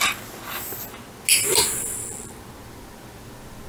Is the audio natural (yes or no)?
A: yes